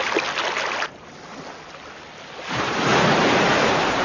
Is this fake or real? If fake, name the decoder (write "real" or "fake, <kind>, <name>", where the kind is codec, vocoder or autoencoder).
real